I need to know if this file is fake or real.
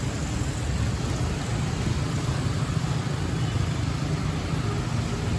real